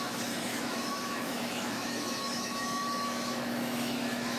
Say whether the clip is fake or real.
fake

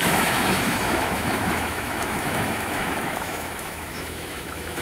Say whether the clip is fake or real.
fake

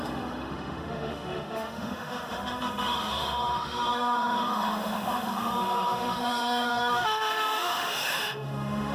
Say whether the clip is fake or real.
fake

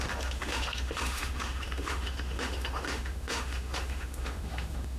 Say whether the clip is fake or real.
fake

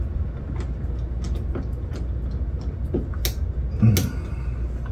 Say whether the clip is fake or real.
real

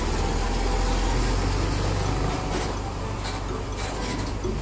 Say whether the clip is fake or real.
real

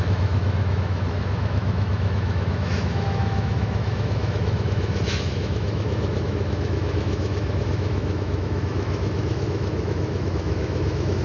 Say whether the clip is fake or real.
fake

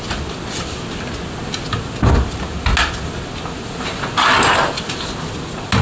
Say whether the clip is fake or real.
real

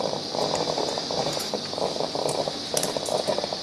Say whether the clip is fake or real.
real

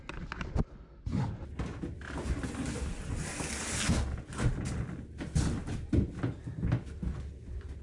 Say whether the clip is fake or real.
real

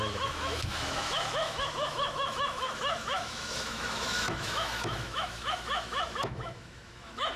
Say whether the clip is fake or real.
fake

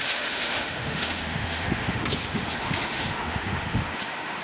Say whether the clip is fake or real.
fake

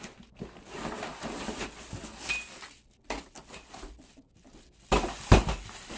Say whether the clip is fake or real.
real